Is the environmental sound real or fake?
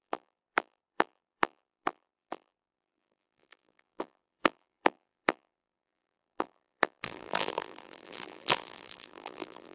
fake